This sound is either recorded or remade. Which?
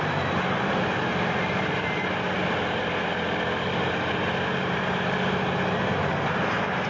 remade